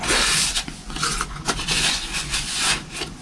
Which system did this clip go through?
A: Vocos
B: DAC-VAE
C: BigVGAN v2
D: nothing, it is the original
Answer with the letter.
A